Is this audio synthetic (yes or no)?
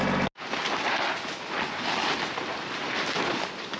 no